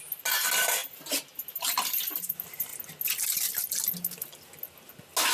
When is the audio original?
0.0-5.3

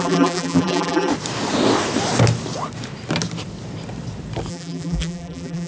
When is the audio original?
1.1-4.5

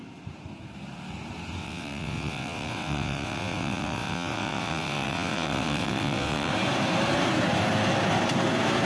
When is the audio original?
0.0-1.6; 6.5-8.9